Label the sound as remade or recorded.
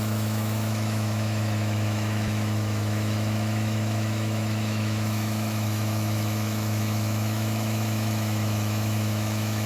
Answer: remade